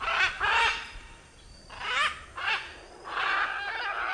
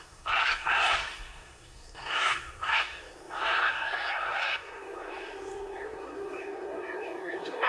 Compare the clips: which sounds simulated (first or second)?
second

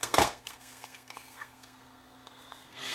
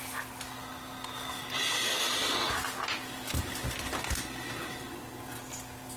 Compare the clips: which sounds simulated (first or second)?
first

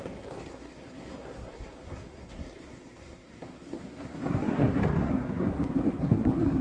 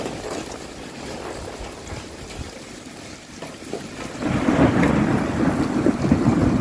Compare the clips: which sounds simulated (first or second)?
first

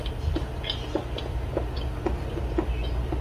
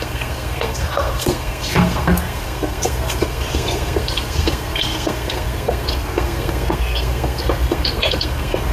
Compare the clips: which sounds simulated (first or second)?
second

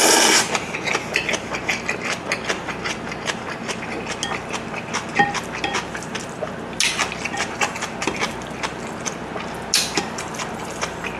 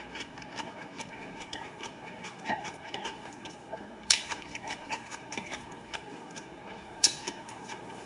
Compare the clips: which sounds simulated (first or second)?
second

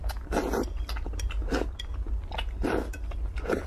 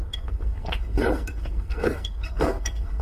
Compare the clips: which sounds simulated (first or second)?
second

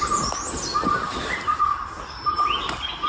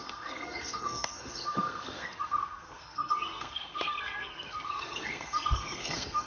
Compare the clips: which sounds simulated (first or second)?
second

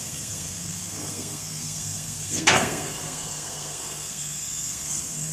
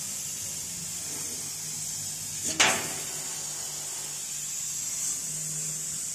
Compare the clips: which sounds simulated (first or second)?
first